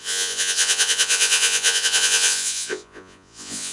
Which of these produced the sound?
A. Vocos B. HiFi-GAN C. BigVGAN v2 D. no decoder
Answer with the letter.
A